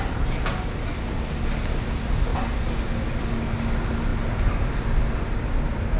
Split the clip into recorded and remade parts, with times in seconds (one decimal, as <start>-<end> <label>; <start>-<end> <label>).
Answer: 0.0-6.0 recorded

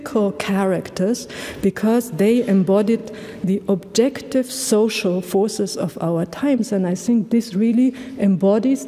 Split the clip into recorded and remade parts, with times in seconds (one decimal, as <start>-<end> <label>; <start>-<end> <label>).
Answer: 0.0-8.9 recorded

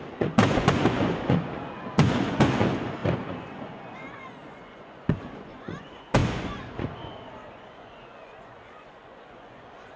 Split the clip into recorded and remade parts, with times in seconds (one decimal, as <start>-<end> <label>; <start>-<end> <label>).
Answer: 0.0-10.0 remade

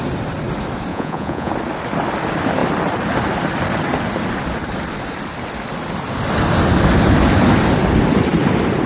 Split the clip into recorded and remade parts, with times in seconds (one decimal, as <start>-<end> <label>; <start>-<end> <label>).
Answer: 0.0-0.9 recorded; 0.9-1.5 remade; 1.5-8.9 recorded

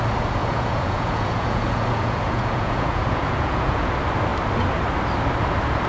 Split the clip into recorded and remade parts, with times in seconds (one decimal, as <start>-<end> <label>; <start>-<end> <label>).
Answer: 0.0-0.4 recorded; 0.4-3.9 remade; 3.9-5.9 recorded

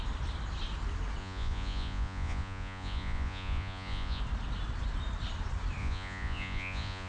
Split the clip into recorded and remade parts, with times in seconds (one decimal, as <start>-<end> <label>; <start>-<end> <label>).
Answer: 0.0-1.2 recorded; 1.2-4.2 remade; 4.2-5.8 recorded; 5.8-7.1 remade

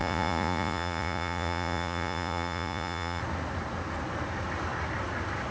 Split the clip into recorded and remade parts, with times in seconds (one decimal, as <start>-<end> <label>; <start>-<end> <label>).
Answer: 0.0-3.2 remade; 3.2-5.5 recorded

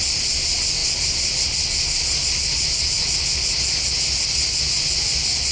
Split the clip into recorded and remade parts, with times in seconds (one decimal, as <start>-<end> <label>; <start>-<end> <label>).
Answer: 0.0-5.5 recorded